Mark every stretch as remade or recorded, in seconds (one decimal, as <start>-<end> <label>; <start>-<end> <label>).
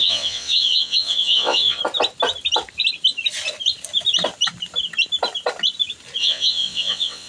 0.0-1.8 remade; 1.8-6.2 recorded; 6.2-7.3 remade